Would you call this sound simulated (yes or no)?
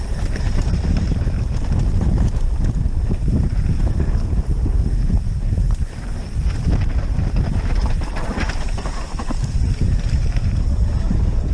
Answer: yes